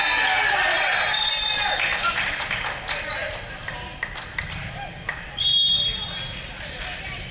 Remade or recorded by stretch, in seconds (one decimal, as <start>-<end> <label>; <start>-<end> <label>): 0.0-0.7 recorded; 0.7-1.3 remade; 1.3-7.3 recorded